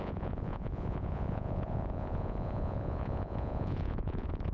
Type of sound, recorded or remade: remade